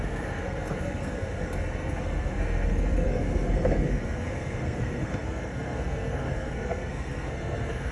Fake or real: fake